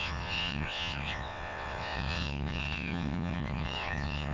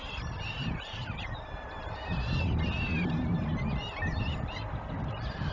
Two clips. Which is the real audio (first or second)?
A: second